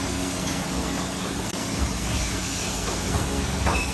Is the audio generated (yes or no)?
yes